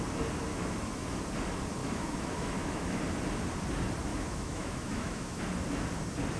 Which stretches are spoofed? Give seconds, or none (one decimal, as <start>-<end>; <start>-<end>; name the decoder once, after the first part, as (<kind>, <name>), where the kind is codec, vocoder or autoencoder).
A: 0.5-1.2 (autoencoder, DAC-VAE); 1.8-3.0; 4.1-5.4